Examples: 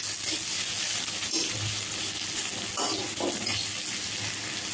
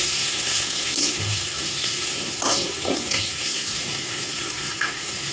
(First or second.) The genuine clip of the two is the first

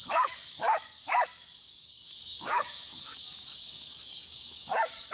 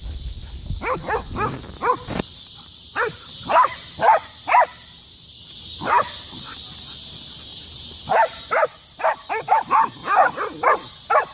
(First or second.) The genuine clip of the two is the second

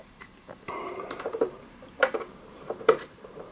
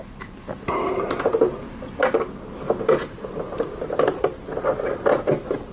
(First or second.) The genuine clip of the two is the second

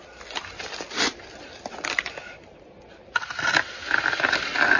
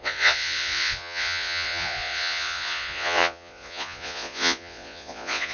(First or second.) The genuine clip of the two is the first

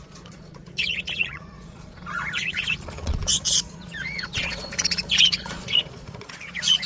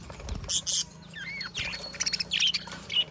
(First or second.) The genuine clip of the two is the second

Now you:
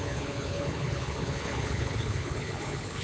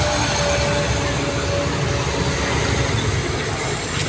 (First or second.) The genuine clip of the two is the second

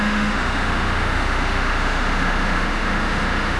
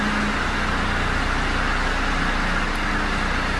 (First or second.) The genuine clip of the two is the second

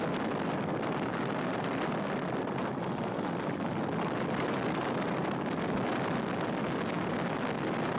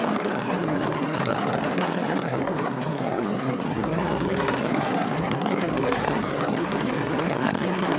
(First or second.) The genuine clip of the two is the first